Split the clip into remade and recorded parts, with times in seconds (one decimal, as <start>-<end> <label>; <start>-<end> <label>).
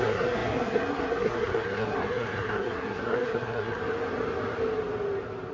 0.0-3.8 remade; 3.8-5.5 recorded